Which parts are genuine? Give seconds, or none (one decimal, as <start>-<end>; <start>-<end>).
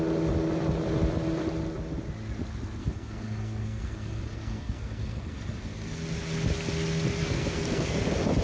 0.0-2.8; 6.0-7.2; 8.0-8.4